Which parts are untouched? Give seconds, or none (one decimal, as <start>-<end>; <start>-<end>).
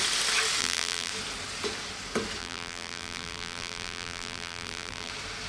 0.0-0.6; 1.1-2.4; 5.1-5.5